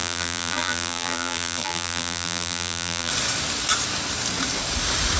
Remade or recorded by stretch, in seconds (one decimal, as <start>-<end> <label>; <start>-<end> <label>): 0.0-3.1 remade; 3.1-5.2 recorded